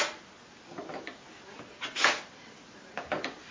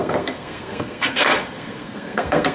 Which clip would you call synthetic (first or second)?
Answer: second